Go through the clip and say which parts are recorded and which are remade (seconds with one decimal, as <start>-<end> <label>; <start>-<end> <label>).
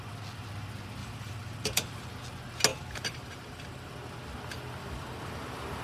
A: 0.0-1.0 recorded; 1.0-2.1 remade; 2.1-2.7 recorded; 2.7-3.9 remade; 3.9-4.8 recorded; 4.8-5.8 remade